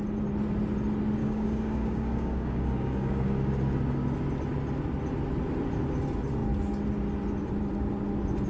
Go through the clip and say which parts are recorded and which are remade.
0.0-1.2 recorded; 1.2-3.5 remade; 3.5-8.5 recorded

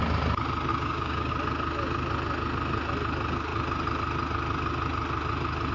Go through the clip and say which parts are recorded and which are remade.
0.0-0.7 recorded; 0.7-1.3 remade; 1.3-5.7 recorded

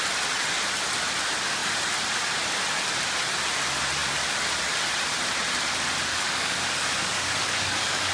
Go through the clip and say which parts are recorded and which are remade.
0.0-6.1 recorded; 6.1-8.1 remade

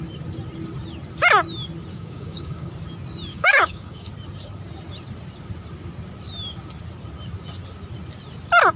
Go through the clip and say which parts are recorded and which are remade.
0.0-1.9 recorded; 1.9-2.7 remade; 2.7-3.3 recorded; 3.3-4.1 remade; 4.1-8.8 recorded

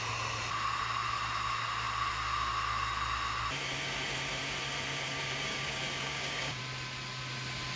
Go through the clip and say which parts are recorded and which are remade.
0.0-5.1 recorded; 5.1-6.6 remade; 6.6-7.8 recorded

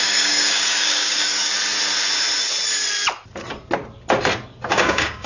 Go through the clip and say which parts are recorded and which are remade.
0.0-1.5 remade; 1.5-4.7 recorded; 4.7-5.3 remade